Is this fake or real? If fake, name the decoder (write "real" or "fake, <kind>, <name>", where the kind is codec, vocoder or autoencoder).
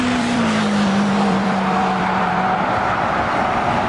fake, vocoder, BigVGAN v2